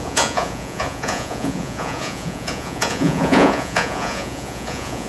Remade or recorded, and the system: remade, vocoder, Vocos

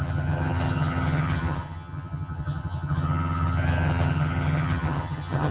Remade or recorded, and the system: remade, vocoder, HiFi-GAN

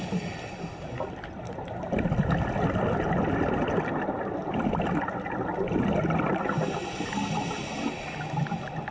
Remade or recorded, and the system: recorded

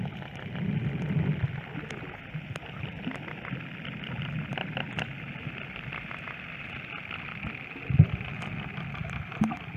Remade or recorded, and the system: recorded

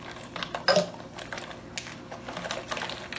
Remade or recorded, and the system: recorded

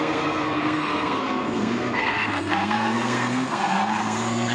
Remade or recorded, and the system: remade, codec, SNAC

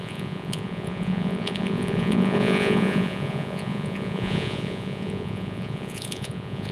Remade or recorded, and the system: remade, vocoder, Vocos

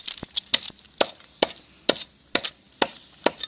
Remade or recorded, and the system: recorded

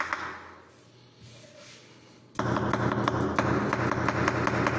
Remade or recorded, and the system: recorded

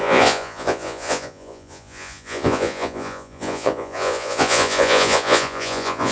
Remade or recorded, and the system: remade, vocoder, Vocos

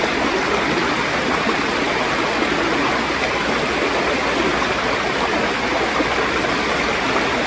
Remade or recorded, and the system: recorded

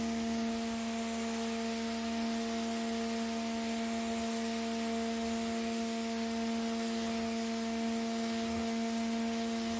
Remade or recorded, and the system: recorded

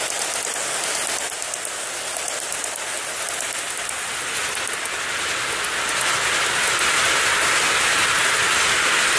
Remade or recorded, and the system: recorded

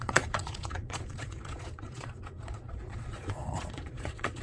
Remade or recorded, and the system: remade, vocoder, Vocos